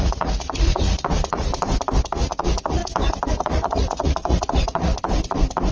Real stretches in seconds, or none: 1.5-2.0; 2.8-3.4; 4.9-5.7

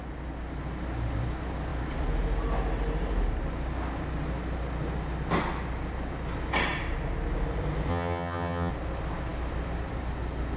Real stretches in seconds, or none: 0.0-7.9; 8.7-10.6

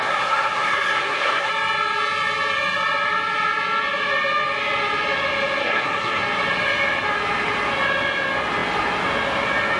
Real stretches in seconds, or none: 1.5-5.6; 6.2-9.8

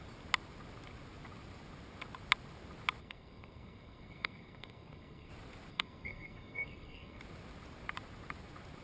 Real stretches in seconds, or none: 0.0-3.0; 5.3-5.7; 7.2-8.8

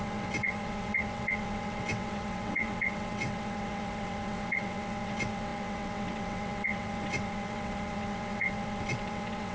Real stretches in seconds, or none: none

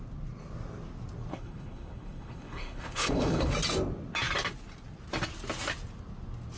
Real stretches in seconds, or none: 0.0-1.3; 3.5-6.6

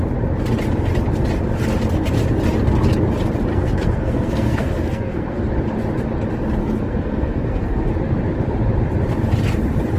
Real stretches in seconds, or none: 0.0-3.5; 5.4-6.6; 7.9-10.0